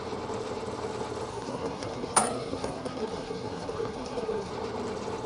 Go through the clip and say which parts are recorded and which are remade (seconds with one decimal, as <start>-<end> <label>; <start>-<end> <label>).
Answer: 0.0-1.3 recorded; 1.3-4.5 remade; 4.5-5.3 recorded